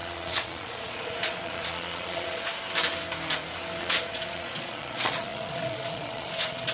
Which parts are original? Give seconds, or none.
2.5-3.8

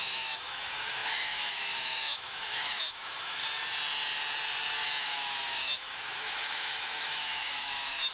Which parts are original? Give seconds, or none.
3.4-5.0

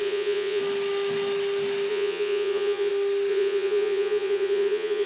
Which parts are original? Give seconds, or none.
0.6-1.9; 2.9-3.3